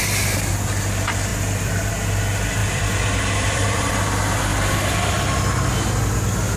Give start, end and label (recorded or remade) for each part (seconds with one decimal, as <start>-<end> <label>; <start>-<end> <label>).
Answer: 0.0-1.3 recorded; 1.3-1.9 remade; 1.9-2.6 recorded; 2.6-3.9 remade; 3.9-4.5 recorded; 4.5-5.1 remade; 5.1-6.6 recorded